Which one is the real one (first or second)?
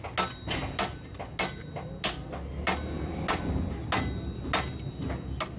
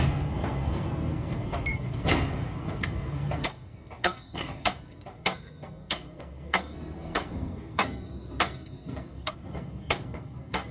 first